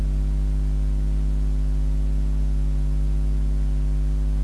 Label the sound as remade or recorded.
recorded